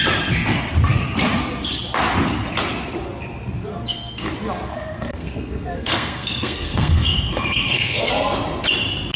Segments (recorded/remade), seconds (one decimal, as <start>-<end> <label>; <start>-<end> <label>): 0.0-3.7 recorded; 3.7-4.3 remade; 4.3-4.7 recorded; 4.7-8.1 remade; 8.1-9.2 recorded